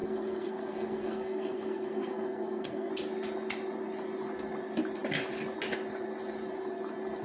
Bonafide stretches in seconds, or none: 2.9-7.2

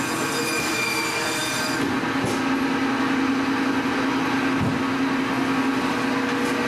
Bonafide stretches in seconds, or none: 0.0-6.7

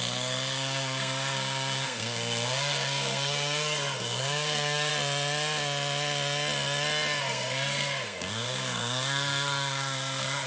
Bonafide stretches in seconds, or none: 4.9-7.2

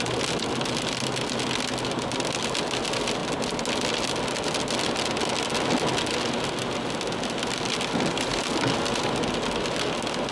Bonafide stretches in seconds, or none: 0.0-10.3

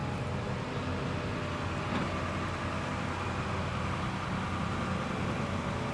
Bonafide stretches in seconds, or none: 0.0-5.9